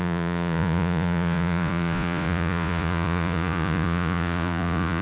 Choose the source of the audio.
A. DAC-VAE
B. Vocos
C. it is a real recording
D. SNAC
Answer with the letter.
B